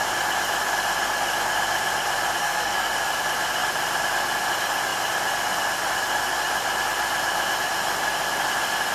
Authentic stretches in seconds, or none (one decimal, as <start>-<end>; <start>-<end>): 0.0-2.4; 2.9-8.9